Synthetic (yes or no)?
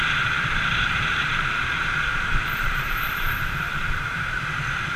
yes